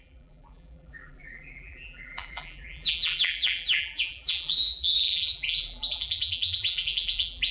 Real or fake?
fake